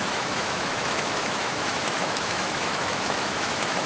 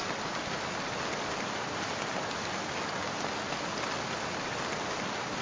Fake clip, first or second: first